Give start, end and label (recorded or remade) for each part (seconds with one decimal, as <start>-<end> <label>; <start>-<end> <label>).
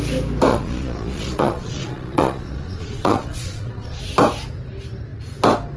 0.0-0.5 recorded; 0.5-4.0 remade; 4.0-5.8 recorded